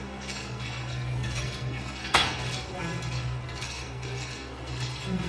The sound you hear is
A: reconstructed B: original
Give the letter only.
A